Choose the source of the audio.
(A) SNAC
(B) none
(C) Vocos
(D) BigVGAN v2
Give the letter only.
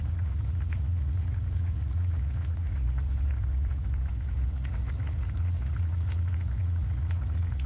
C